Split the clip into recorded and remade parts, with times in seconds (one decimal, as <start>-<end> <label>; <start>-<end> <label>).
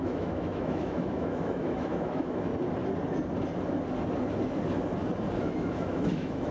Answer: 0.0-2.5 remade; 2.5-5.4 recorded; 5.4-6.5 remade